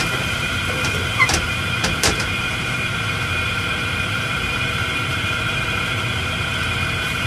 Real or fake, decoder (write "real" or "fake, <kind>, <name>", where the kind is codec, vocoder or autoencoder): fake, vocoder, BigVGAN v2